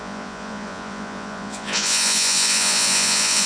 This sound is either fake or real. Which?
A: fake